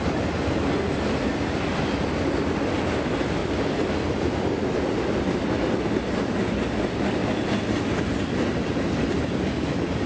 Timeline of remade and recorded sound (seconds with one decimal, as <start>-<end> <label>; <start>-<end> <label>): 0.0-3.4 recorded; 3.4-5.2 remade; 5.2-10.1 recorded